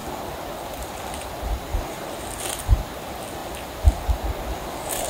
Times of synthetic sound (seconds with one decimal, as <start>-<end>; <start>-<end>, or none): none